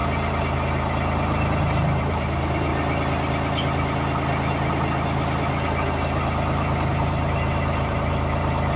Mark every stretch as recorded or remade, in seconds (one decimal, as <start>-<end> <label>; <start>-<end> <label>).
0.0-1.6 recorded; 1.6-2.7 remade; 2.7-6.9 recorded; 6.9-8.8 remade